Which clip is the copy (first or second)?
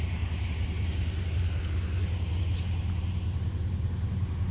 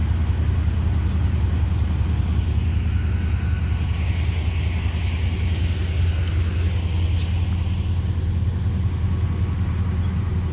first